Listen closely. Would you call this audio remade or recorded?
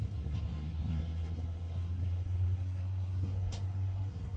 remade